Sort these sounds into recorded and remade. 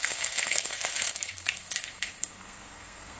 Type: remade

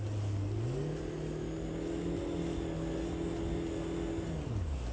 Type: recorded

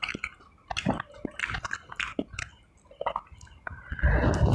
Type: recorded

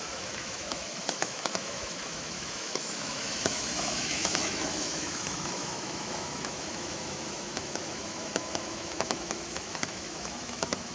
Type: remade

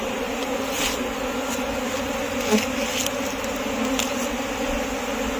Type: recorded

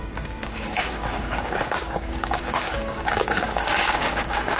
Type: remade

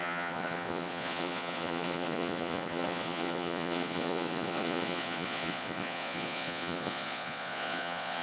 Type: remade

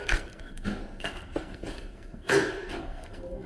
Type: remade